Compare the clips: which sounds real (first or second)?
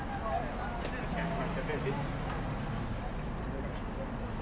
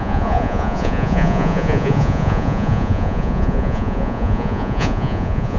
first